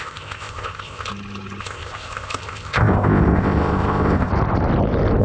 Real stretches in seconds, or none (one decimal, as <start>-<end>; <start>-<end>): 1.1-1.6; 4.3-5.2